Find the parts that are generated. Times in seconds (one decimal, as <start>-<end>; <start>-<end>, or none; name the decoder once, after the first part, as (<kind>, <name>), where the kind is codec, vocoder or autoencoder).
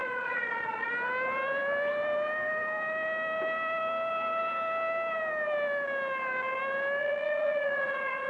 0.0-0.9 (vocoder, Vocos); 7.0-8.3